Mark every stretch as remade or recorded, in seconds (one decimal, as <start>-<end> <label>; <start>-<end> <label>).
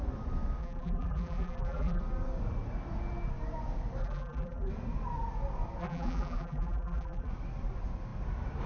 0.0-0.6 recorded; 0.6-2.0 remade; 2.0-4.0 recorded; 4.0-4.7 remade; 4.7-5.8 recorded; 5.8-7.3 remade; 7.3-8.7 recorded